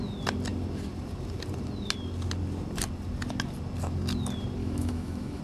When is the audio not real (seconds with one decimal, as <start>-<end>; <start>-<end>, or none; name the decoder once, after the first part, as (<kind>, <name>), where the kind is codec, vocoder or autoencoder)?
4.6-5.4 (autoencoder, DAC-VAE)